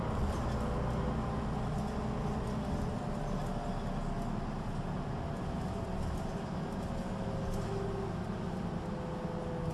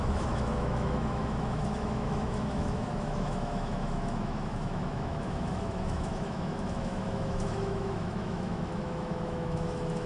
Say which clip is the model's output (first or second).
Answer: second